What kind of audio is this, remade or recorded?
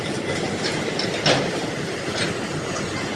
recorded